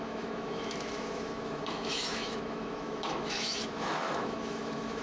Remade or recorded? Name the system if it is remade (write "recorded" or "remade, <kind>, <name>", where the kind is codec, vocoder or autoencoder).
remade, autoencoder, DAC-VAE